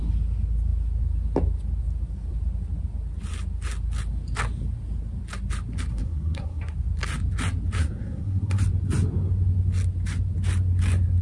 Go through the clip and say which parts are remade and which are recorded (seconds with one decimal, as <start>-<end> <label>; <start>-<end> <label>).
0.0-5.9 recorded; 5.9-6.6 remade; 6.6-7.8 recorded; 7.8-8.6 remade; 8.6-11.2 recorded